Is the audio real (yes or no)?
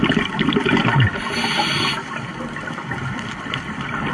yes